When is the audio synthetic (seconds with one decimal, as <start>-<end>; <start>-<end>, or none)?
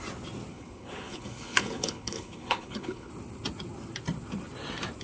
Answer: 0.5-3.1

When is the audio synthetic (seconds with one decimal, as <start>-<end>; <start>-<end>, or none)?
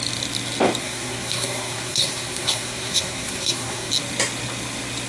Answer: 0.8-3.9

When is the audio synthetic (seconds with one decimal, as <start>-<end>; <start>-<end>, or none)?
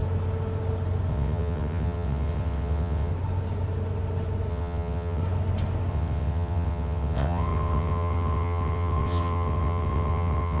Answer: 1.1-3.1; 4.5-5.2; 5.9-10.6